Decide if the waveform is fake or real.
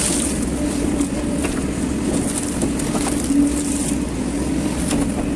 real